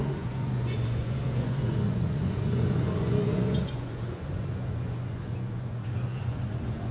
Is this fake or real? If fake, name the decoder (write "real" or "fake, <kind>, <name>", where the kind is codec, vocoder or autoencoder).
fake, vocoder, Vocos